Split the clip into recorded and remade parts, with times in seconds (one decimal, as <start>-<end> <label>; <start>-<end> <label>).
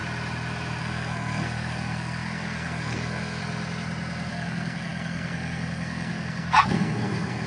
0.0-0.8 recorded; 0.8-3.4 remade; 3.4-4.3 recorded; 4.3-7.5 remade